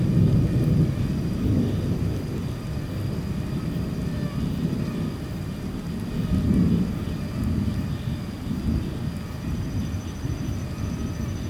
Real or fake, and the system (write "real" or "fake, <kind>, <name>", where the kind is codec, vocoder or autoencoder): real